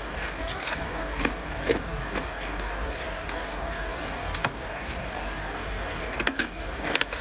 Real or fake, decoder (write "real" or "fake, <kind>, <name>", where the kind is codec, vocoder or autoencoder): fake, codec, DAC